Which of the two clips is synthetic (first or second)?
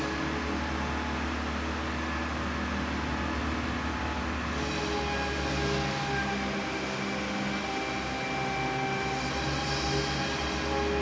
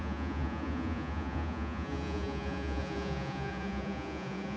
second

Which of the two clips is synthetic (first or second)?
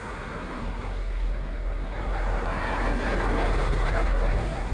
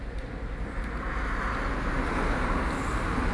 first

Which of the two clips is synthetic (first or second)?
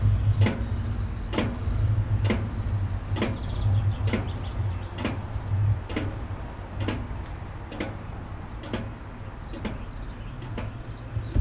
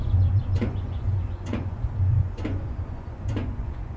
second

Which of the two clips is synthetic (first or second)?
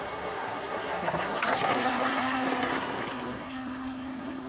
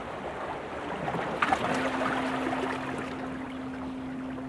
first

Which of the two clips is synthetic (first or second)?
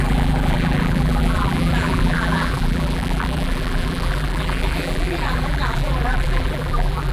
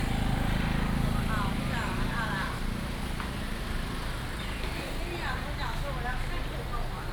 first